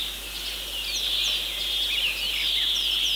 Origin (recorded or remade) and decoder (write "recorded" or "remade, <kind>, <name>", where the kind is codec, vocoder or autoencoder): recorded